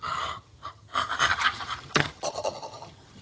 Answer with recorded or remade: remade